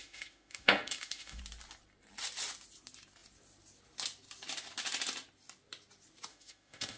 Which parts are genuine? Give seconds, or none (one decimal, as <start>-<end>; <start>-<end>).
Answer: 1.4-6.3